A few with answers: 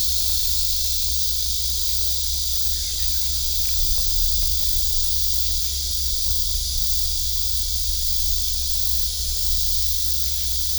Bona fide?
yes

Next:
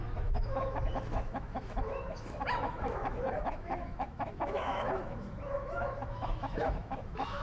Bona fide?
no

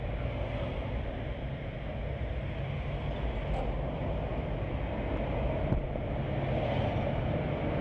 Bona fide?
yes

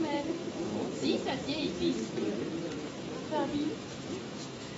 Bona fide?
no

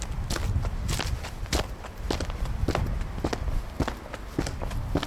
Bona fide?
yes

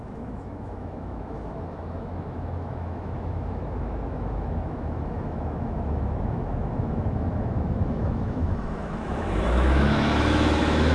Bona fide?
no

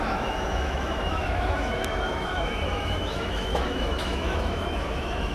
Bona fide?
no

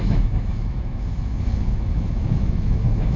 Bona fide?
no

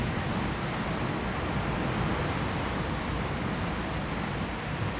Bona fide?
yes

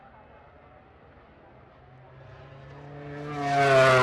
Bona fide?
yes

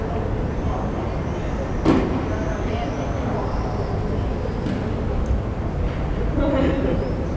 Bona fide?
yes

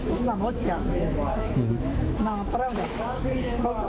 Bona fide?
no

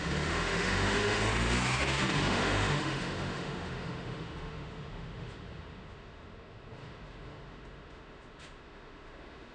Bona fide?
no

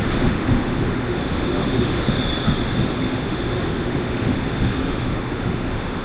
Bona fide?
no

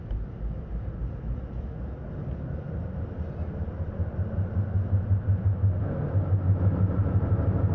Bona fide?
yes